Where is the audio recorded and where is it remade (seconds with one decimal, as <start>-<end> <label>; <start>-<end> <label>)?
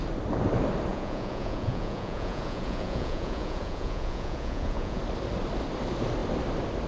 0.0-0.9 recorded; 0.9-5.0 remade; 5.0-6.9 recorded